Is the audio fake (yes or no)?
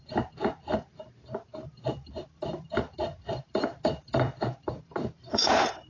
yes